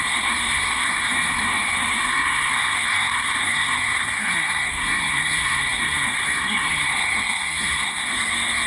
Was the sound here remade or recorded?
remade